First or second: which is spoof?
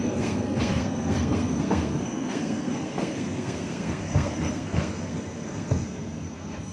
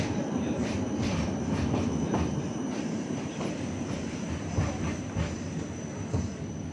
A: first